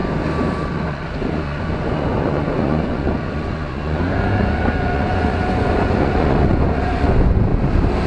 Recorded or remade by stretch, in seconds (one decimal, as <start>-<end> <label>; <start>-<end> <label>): 0.0-0.6 recorded; 0.6-7.5 remade; 7.5-8.1 recorded